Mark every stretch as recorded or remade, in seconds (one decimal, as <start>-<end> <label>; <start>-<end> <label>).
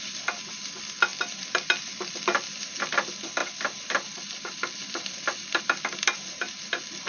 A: 0.0-7.1 recorded